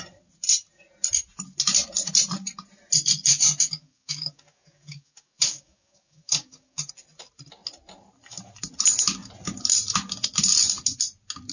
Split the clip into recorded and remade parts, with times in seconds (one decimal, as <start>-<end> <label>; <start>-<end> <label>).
0.0-3.3 recorded; 3.3-6.9 remade; 6.9-11.5 recorded